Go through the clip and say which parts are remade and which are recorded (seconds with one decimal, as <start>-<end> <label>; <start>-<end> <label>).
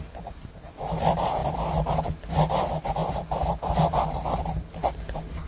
0.0-5.5 recorded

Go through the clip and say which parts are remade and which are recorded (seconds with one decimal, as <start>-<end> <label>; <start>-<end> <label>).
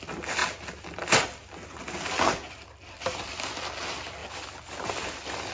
0.0-5.5 recorded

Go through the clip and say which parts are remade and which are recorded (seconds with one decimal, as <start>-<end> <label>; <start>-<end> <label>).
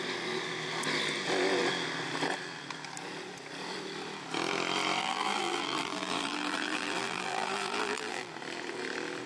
0.0-5.0 recorded; 5.0-8.3 remade; 8.3-9.3 recorded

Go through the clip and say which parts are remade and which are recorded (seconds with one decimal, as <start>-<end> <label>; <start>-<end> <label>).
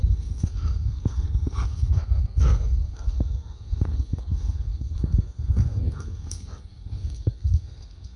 0.0-8.2 remade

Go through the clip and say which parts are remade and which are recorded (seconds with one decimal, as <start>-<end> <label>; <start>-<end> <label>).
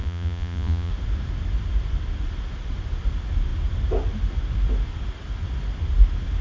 0.0-0.9 remade; 0.9-6.4 recorded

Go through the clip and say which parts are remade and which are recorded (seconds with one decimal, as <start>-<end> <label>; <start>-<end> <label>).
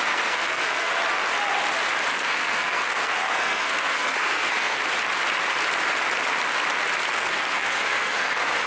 0.0-0.9 remade; 0.9-2.1 recorded; 2.1-4.8 remade; 4.8-7.1 recorded; 7.1-8.7 remade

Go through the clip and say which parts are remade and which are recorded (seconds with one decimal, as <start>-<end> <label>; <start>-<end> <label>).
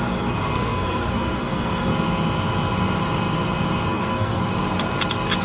0.0-1.9 remade; 1.9-3.9 recorded; 3.9-4.4 remade; 4.4-5.4 recorded